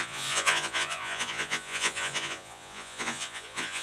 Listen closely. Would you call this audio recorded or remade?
remade